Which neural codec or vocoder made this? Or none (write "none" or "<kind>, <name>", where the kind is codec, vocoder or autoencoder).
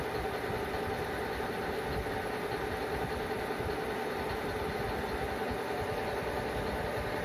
none